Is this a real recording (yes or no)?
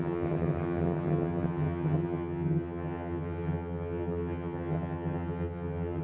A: no